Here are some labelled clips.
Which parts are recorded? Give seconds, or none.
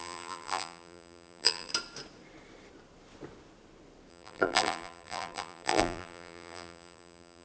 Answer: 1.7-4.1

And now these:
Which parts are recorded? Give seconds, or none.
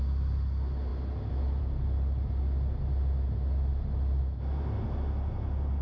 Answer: 0.0-5.8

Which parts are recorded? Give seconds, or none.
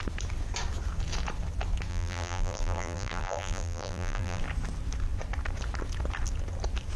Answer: 0.0-1.9; 4.4-7.0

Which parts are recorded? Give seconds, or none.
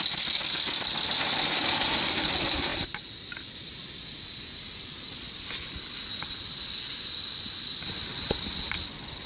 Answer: 0.0-9.3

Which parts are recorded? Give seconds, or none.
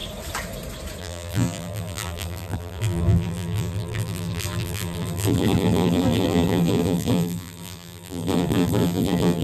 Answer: 0.0-1.0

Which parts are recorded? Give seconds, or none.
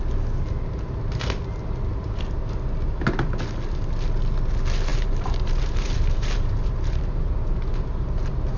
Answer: 0.0-4.9; 7.5-8.6